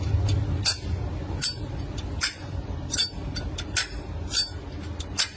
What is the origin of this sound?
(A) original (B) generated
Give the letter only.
A